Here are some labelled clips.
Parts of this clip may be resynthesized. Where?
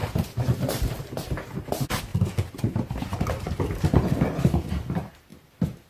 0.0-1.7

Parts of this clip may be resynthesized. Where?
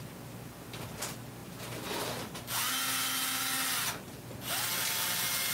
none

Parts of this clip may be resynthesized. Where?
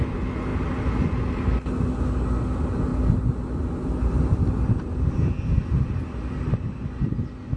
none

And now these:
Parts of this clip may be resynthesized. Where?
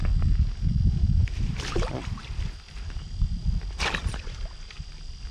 1.2-1.9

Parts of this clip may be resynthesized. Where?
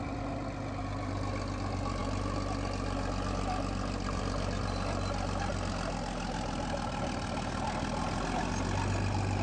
none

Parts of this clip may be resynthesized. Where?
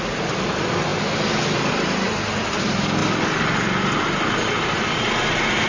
0.0-0.9; 2.6-3.0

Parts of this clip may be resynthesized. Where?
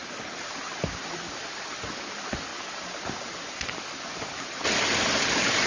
0.0-0.7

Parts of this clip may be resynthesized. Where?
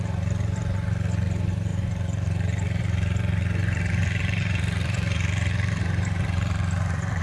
0.0-7.2